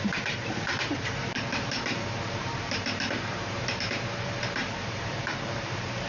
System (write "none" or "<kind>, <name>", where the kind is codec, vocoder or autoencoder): vocoder, BigVGAN v2